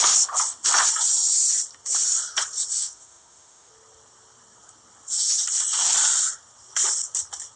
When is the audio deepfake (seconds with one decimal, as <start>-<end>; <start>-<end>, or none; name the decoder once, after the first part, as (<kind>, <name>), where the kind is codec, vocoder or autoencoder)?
2.8-3.7 (autoencoder, DAC-VAE)